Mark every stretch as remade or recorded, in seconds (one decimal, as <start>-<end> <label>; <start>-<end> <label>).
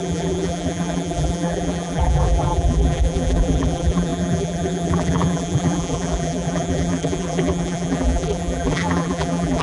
0.0-9.6 remade